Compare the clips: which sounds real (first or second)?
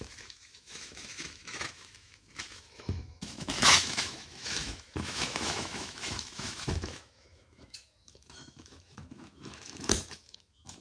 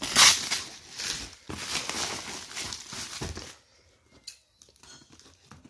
second